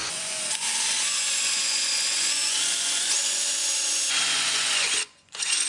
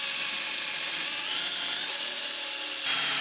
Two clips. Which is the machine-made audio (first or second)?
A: first